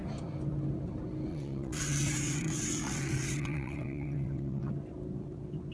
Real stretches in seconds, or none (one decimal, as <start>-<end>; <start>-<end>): 0.0-1.3; 4.7-5.7